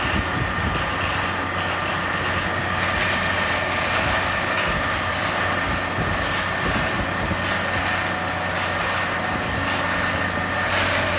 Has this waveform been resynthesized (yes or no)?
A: no